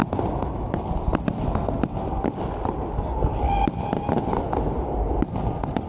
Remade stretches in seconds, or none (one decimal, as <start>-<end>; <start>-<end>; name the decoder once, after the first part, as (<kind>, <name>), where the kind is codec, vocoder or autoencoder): none